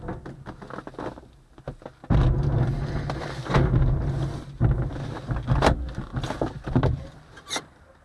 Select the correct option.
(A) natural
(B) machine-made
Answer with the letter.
A